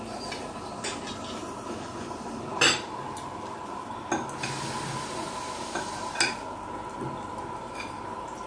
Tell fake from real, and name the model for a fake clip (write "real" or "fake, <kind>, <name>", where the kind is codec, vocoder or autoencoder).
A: real